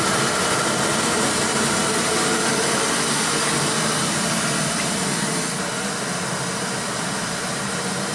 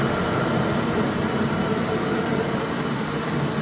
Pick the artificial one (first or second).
second